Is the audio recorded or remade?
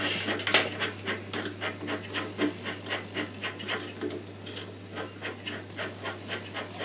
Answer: recorded